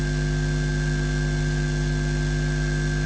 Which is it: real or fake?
real